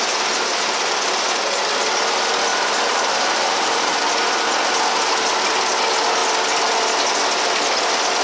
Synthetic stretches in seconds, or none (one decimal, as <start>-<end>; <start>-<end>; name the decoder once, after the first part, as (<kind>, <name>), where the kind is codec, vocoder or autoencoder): 2.5-4.0 (vocoder, BigVGAN v2)